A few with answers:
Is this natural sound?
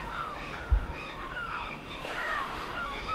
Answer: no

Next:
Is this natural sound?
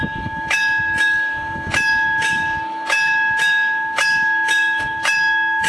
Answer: no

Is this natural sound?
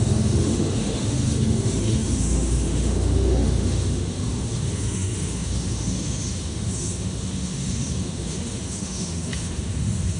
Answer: no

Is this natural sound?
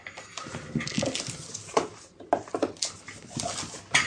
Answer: yes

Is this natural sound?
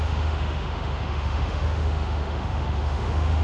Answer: no